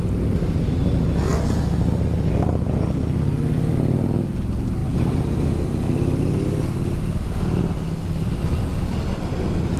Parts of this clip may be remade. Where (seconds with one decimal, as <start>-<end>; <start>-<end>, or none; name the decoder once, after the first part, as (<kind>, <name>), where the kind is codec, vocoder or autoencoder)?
none